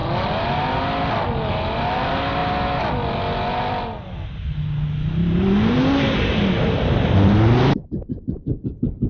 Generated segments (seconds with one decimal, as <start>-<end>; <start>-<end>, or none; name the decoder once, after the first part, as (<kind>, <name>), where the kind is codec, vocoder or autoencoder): 5.2-6.5 (vocoder, BigVGAN v2)